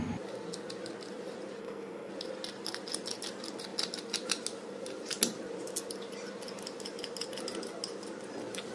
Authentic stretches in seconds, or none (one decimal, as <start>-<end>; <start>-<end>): 0.0-1.6; 2.1-8.7